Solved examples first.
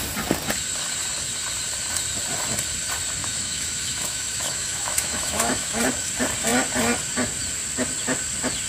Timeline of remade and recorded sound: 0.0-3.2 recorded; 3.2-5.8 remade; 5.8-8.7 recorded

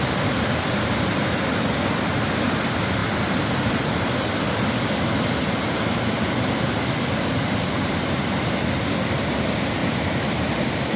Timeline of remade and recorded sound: 0.0-11.0 recorded

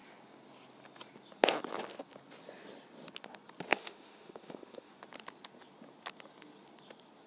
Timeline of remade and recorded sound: 0.0-3.7 recorded; 3.7-4.9 remade; 4.9-7.3 recorded

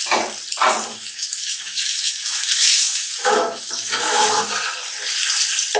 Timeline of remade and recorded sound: 0.0-0.9 recorded; 0.9-4.4 remade; 4.4-5.8 recorded

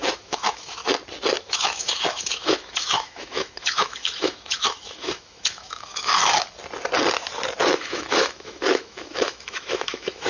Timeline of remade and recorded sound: 0.0-0.8 remade; 0.8-1.4 recorded; 1.4-6.1 remade; 6.1-7.7 recorded; 7.7-10.3 remade

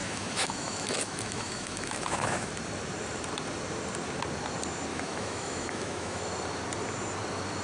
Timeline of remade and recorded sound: 0.0-2.5 remade; 2.5-4.9 recorded; 4.9-6.2 remade; 6.2-7.6 recorded

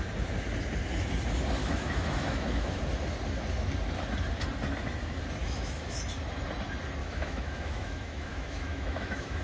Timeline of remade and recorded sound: 0.0-1.6 recorded; 1.6-2.8 remade; 2.8-5.4 recorded; 5.4-6.0 remade; 6.0-7.0 recorded; 7.0-9.4 remade